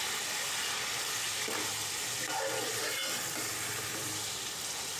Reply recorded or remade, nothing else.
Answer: recorded